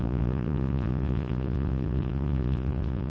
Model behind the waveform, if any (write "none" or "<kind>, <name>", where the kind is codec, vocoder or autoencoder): vocoder, Vocos